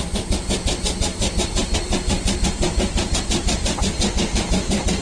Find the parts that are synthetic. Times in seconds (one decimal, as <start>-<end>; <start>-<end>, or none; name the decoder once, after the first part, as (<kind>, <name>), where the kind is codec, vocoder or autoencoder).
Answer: none